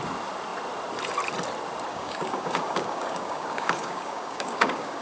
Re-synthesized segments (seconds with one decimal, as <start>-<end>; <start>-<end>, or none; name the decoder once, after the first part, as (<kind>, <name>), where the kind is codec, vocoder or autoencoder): 1.9-5.0 (codec, DAC)

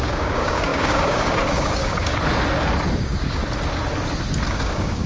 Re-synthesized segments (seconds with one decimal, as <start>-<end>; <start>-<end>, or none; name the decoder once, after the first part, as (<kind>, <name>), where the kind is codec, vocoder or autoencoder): 0.0-2.1 (codec, DAC); 3.0-3.4; 4.5-5.1

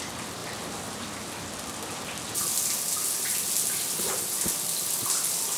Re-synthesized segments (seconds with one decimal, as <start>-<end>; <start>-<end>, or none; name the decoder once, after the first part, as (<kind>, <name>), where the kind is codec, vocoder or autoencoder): none

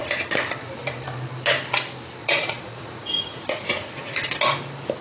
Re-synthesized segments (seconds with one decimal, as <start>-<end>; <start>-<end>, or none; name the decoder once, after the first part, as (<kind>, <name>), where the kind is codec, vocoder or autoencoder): 2.2-4.3 (vocoder, Vocos)

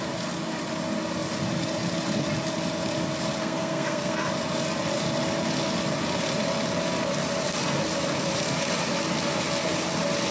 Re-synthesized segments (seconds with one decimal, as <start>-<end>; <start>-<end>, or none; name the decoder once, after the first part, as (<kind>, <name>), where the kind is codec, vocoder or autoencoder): 3.4-4.3 (codec, SNAC)